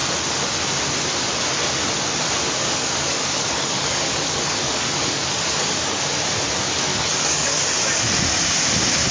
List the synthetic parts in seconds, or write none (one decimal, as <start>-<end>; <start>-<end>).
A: 2.6-6.0; 6.9-7.6